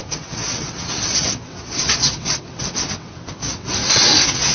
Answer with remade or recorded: remade